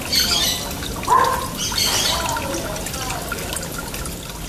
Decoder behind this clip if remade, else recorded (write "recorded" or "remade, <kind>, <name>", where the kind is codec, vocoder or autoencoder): recorded